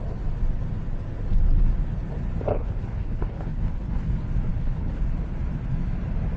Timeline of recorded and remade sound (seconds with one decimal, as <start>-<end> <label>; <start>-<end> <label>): 0.0-2.5 recorded; 2.5-4.1 remade; 4.1-4.5 recorded; 4.5-5.0 remade; 5.0-6.4 recorded